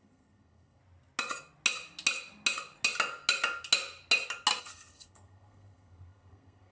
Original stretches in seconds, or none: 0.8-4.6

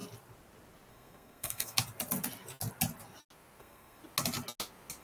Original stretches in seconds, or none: 0.0-0.9; 1.8-3.6; 4.0-5.0